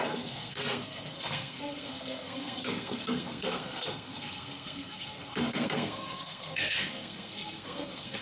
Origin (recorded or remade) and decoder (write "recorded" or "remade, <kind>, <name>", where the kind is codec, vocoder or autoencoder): remade, codec, SNAC